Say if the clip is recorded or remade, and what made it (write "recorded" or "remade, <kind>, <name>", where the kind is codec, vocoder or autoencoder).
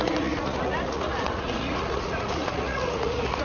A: remade, vocoder, Vocos